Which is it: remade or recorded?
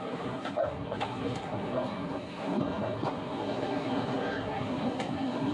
remade